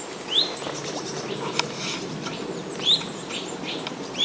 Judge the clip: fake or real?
real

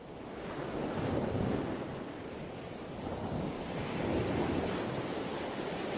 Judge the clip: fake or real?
real